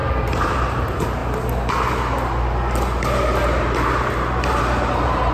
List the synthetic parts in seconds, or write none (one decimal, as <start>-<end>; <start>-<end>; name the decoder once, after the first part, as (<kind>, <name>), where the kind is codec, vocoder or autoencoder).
0.0-1.2 (vocoder, BigVGAN v2); 4.4-5.3